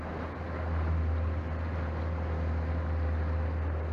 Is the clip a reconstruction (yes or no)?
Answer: no